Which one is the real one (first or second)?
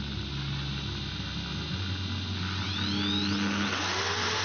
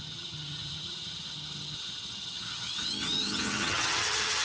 first